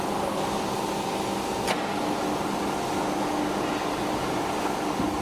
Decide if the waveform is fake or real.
real